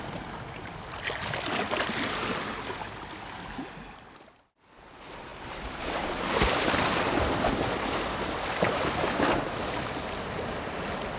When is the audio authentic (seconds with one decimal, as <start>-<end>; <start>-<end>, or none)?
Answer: 0.0-11.2